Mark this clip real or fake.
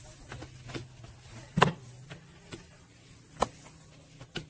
real